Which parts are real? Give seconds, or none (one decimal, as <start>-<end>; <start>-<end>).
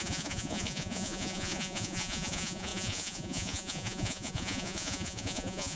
none